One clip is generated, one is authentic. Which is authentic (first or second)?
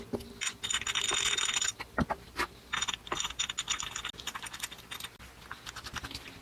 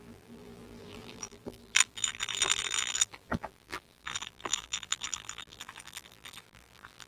first